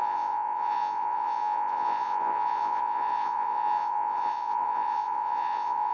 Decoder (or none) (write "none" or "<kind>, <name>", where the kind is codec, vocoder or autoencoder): vocoder, Vocos